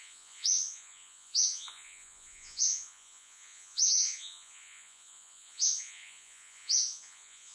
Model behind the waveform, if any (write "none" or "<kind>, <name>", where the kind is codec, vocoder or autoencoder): vocoder, Vocos